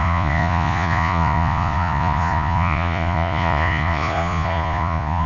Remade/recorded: remade